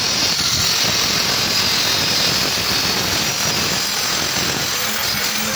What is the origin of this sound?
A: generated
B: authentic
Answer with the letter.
B